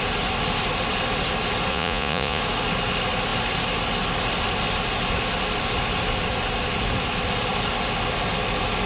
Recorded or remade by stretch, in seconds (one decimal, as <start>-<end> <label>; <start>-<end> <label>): 0.0-1.7 recorded; 1.7-2.4 remade; 2.4-8.9 recorded